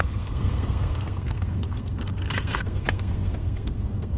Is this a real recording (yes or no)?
no